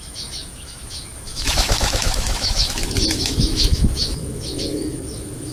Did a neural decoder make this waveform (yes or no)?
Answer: yes